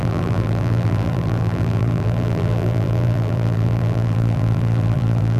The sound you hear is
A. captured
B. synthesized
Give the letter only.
B